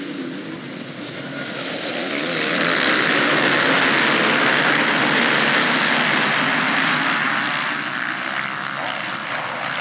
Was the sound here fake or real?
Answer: real